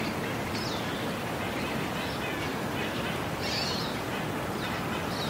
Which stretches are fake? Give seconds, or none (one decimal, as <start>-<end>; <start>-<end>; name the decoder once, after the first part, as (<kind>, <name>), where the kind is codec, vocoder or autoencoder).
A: 2.5-4.1 (vocoder, BigVGAN v2)

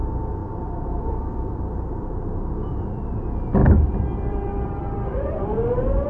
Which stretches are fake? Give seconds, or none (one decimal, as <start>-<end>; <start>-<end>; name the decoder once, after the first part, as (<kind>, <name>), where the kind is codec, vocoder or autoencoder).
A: 0.4-2.5 (vocoder, BigVGAN v2); 3.6-5.4